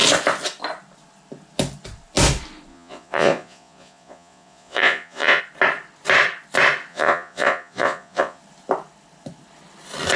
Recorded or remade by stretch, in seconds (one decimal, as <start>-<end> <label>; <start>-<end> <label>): 0.0-2.7 recorded; 2.7-5.4 remade; 5.4-6.9 recorded; 6.9-8.4 remade; 8.4-10.2 recorded